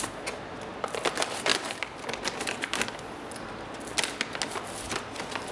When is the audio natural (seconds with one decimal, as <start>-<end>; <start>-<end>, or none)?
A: 0.0-5.5